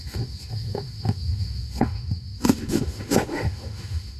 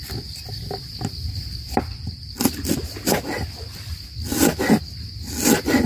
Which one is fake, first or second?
first